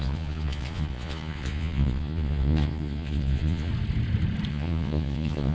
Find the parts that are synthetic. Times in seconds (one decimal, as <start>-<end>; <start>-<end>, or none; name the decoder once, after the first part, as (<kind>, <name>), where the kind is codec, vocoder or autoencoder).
0.0-3.7 (vocoder, Vocos); 4.5-5.5